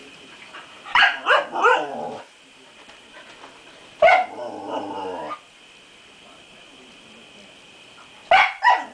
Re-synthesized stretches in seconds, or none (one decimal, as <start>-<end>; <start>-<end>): 0.0-1.0